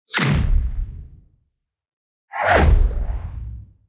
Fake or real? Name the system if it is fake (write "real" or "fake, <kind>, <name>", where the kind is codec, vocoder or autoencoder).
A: real